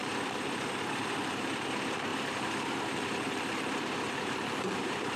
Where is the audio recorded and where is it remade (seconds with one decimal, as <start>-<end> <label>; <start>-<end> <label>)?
0.0-5.2 remade